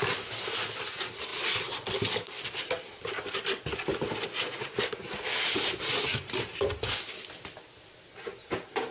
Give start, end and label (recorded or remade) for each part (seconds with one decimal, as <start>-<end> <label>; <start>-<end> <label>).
0.0-8.9 recorded